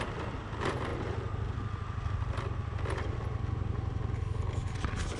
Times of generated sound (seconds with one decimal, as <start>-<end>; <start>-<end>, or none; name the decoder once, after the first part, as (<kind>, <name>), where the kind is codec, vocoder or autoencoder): none